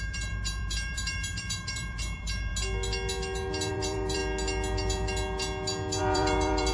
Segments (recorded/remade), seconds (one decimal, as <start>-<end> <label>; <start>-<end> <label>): 0.0-2.5 remade; 2.5-3.7 recorded; 3.7-4.2 remade; 4.2-6.0 recorded; 6.0-6.7 remade